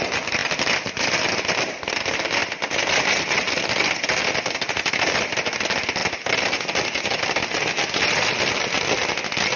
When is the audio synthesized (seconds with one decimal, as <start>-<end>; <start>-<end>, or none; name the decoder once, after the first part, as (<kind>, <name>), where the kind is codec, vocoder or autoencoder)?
none